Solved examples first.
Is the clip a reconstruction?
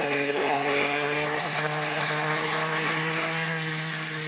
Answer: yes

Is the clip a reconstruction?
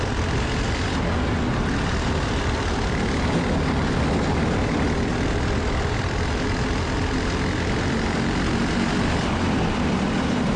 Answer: no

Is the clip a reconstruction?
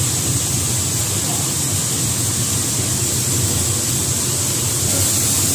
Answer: no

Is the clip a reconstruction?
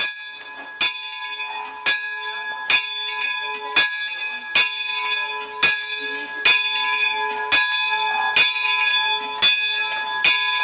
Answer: no